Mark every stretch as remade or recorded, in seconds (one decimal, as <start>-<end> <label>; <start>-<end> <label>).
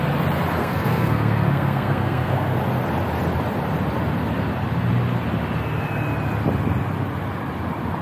0.0-0.6 recorded; 0.6-2.6 remade; 2.6-8.0 recorded